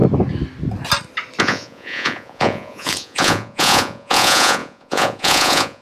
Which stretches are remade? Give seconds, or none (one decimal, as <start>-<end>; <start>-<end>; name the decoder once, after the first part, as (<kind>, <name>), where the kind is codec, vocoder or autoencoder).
1.4-5.8 (vocoder, Vocos)